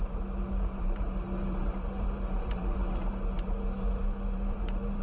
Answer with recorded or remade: remade